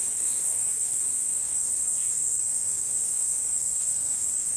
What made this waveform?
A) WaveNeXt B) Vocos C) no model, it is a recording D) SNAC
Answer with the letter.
D